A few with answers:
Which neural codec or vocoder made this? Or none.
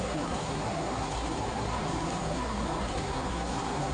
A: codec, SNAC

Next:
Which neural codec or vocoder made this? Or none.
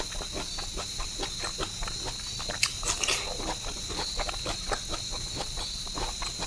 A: none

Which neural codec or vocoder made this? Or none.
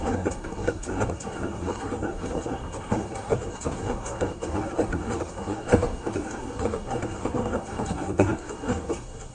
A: codec, SNAC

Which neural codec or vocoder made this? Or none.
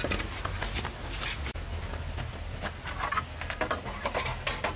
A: none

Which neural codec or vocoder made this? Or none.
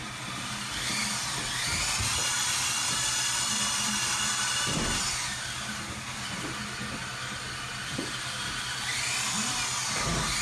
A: none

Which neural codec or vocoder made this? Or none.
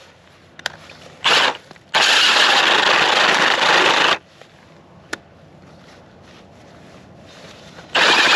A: none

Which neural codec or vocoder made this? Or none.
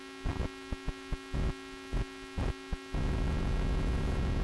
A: none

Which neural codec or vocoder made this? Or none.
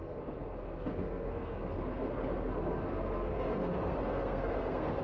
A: codec, SNAC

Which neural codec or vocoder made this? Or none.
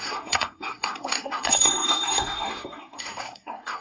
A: codec, SNAC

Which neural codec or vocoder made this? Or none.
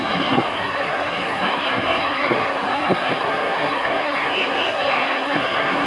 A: codec, SNAC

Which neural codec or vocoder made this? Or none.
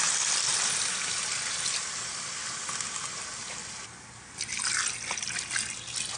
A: none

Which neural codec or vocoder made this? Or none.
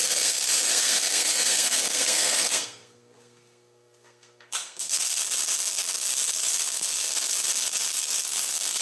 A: codec, SNAC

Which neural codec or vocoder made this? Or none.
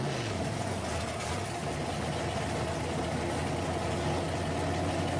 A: none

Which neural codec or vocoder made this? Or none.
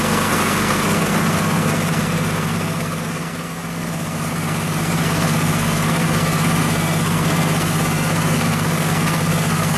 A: codec, SNAC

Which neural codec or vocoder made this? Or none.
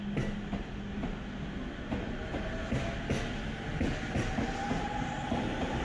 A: none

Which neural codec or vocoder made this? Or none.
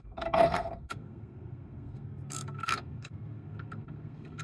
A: codec, SNAC